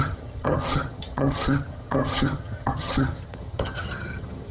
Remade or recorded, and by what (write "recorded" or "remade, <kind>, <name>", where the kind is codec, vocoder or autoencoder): remade, vocoder, HiFi-GAN